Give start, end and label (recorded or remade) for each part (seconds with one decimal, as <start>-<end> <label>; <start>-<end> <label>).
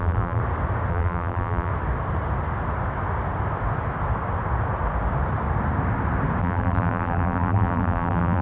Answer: 0.0-0.4 remade; 0.4-0.9 recorded; 0.9-1.7 remade; 1.7-6.4 recorded; 6.4-8.4 remade